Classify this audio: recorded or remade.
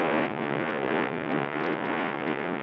remade